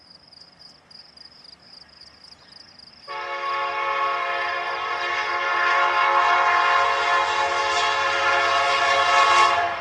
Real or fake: real